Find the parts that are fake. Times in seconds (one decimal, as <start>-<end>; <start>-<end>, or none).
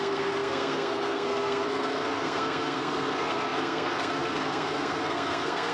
0.0-5.7